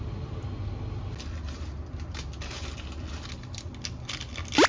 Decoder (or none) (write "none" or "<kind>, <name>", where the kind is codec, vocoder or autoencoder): none